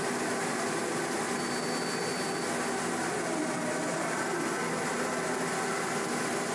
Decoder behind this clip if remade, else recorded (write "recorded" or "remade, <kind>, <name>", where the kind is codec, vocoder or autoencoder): recorded